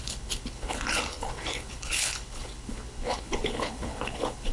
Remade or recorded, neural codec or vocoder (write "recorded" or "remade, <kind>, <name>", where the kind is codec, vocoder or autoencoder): remade, codec, HILCodec